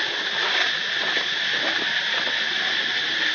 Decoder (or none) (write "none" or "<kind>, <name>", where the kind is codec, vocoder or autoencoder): none